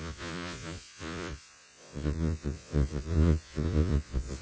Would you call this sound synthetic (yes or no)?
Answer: yes